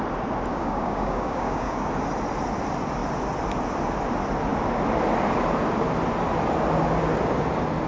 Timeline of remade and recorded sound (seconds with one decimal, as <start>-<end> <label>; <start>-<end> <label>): 0.0-0.5 recorded; 0.5-1.9 remade; 1.9-7.9 recorded